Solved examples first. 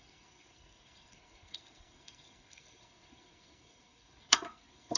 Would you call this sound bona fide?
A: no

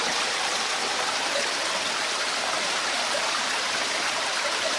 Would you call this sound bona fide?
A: no